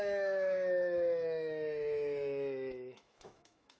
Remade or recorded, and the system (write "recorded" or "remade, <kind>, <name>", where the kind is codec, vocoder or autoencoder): remade, autoencoder, DAC-VAE